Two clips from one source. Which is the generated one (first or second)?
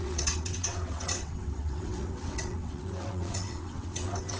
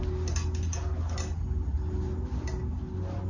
first